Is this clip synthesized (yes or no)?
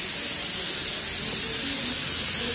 no